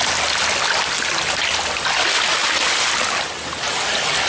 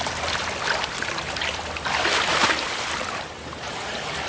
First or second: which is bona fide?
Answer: first